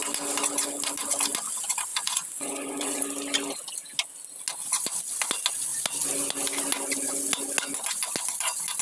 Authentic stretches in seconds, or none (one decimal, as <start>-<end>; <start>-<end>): 0.0-1.9; 3.0-8.8